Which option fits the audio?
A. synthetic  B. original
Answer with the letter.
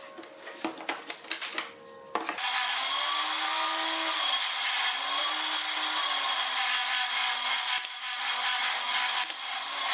B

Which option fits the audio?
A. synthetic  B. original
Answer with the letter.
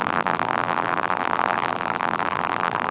A